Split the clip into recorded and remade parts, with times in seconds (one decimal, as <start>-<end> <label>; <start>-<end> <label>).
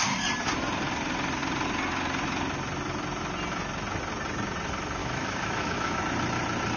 0.0-5.0 recorded; 5.0-6.0 remade; 6.0-6.8 recorded